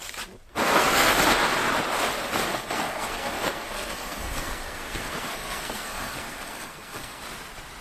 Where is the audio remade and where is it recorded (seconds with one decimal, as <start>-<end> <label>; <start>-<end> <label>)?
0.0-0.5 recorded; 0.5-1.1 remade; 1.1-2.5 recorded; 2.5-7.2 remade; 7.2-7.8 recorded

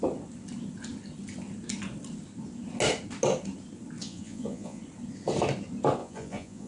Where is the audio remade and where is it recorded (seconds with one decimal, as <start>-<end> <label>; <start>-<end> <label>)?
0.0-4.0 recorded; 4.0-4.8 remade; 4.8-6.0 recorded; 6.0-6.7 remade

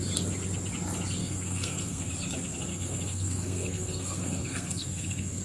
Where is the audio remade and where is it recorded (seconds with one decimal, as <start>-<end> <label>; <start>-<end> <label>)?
0.0-1.2 recorded; 1.2-2.1 remade; 2.1-2.7 recorded; 2.7-5.4 remade

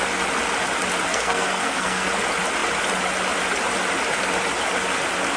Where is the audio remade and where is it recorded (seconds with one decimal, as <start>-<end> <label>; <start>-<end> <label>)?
0.0-1.1 recorded; 1.1-2.1 remade; 2.1-5.4 recorded

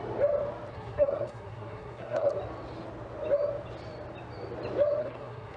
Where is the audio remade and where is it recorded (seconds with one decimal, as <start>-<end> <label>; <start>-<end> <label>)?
0.0-0.7 recorded; 0.7-2.3 remade; 2.3-5.0 recorded; 5.0-5.6 remade